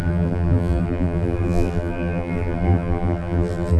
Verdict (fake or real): fake